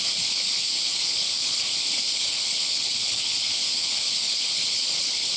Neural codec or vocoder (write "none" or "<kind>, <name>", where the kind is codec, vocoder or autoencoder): codec, HILCodec